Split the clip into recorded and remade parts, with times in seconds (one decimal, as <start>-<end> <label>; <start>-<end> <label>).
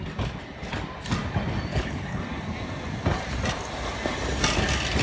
0.0-1.7 recorded; 1.7-2.2 remade; 2.2-5.0 recorded